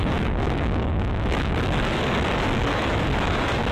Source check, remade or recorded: remade